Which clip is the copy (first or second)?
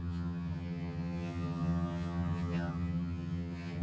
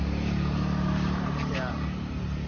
first